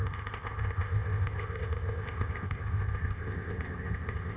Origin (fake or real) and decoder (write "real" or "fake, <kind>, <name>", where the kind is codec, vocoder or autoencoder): fake, codec, ZipCodec